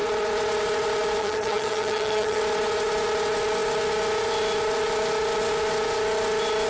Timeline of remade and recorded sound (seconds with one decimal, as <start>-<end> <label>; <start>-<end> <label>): 0.0-1.2 recorded; 1.2-2.4 remade; 2.4-6.7 recorded